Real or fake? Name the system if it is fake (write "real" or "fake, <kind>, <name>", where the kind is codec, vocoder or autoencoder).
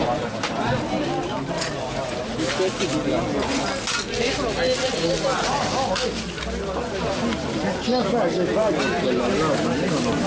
real